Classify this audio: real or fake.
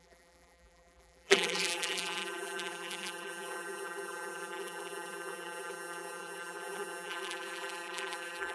fake